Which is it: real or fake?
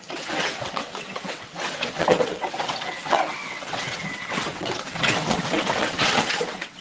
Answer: fake